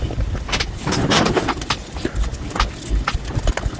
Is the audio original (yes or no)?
yes